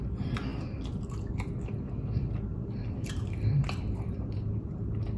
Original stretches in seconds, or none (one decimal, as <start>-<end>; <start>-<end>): 0.0-2.5; 4.5-5.2

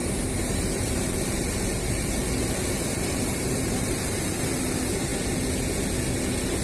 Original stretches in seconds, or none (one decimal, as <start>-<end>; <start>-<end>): 2.3-2.9; 4.6-6.6

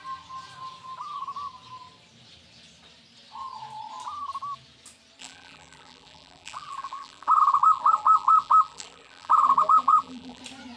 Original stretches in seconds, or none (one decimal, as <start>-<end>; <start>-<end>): 0.0-5.2; 10.4-10.8

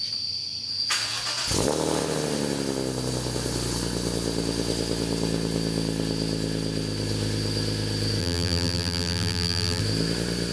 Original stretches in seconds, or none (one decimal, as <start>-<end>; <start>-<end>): 0.0-8.2; 9.8-10.5

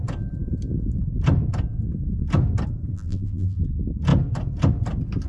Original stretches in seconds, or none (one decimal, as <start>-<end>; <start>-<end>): 0.0-2.9; 3.6-5.3